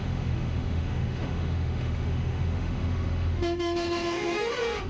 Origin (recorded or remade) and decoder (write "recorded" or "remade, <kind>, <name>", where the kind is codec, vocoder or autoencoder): remade, autoencoder, DAC-VAE